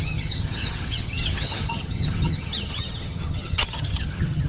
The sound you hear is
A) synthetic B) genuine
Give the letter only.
A